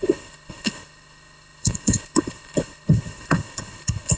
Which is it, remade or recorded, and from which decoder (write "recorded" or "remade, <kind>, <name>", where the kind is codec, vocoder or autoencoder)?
remade, codec, HILCodec